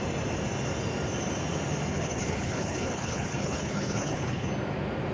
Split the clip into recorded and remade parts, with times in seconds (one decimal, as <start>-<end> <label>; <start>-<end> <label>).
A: 0.0-1.9 recorded; 1.9-4.5 remade; 4.5-5.1 recorded